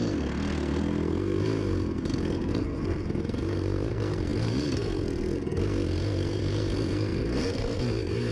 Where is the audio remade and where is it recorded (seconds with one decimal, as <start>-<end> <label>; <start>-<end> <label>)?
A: 0.0-8.3 remade